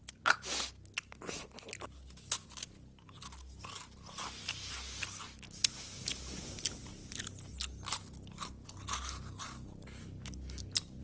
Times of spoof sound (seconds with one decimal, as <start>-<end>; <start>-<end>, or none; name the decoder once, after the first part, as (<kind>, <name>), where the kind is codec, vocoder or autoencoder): none